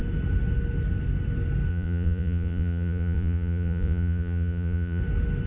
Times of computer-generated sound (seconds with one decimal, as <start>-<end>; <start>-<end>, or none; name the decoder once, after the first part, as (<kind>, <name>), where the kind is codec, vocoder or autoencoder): 1.7-5.0 (vocoder, Vocos)